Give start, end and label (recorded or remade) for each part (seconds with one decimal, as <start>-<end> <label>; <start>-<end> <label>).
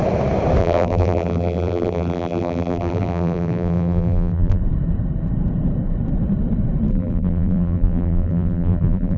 0.0-0.6 recorded; 0.6-4.6 remade; 4.6-6.9 recorded; 6.9-9.2 remade